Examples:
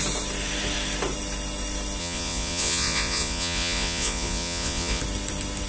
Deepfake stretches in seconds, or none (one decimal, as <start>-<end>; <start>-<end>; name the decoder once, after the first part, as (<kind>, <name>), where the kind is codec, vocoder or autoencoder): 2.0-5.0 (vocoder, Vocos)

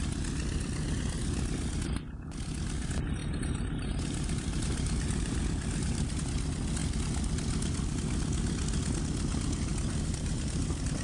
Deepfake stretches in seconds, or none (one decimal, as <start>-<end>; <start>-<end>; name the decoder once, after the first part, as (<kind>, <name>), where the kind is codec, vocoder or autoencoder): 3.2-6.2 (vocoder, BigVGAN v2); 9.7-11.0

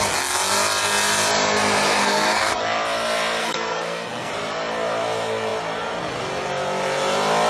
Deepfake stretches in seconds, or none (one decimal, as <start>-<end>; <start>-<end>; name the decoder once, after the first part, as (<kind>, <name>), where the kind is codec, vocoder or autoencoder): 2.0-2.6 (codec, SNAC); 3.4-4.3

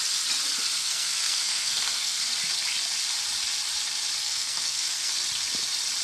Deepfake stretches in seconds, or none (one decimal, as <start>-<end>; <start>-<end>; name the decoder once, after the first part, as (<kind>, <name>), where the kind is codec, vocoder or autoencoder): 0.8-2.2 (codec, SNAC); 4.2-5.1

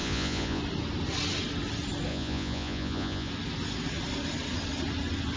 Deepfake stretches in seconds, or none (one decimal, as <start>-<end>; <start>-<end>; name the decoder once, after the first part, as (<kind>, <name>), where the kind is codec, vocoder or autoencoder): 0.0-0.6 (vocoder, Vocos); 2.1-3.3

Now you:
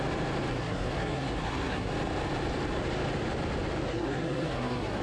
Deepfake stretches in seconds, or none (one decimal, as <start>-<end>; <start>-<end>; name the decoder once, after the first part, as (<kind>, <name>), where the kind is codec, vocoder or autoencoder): 0.5-1.9 (codec, SNAC); 3.9-5.0